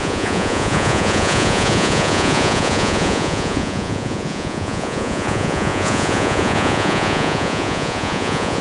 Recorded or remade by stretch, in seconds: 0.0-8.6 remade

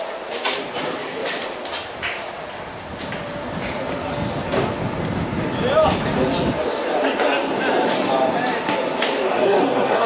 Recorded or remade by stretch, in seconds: 0.0-9.3 recorded; 9.3-10.1 remade

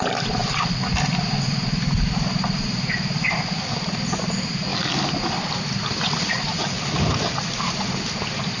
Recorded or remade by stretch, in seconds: 0.0-8.6 recorded

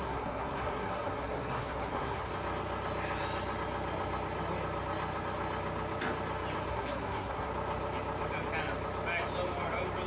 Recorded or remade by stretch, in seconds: 0.0-2.3 remade; 2.3-6.7 recorded; 6.7-7.5 remade; 7.5-10.1 recorded